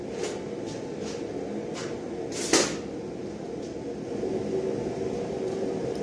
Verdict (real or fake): real